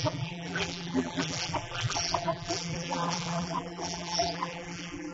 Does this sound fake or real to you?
fake